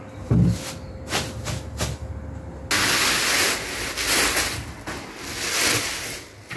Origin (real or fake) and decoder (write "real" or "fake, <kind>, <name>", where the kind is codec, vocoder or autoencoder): real